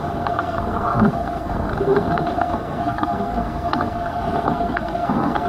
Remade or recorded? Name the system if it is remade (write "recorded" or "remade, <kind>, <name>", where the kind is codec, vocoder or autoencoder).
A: remade, codec, SNAC